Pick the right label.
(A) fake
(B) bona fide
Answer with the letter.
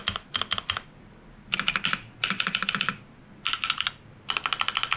B